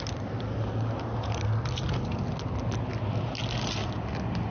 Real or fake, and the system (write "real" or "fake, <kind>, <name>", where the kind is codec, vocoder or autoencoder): real